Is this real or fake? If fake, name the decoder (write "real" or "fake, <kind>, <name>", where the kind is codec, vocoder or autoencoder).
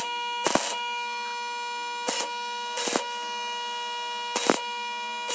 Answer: real